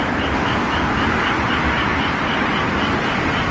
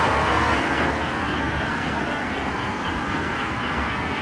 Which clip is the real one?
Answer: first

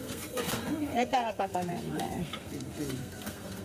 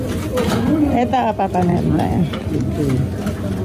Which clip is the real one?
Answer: second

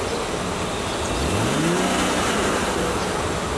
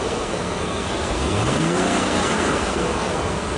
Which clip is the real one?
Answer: first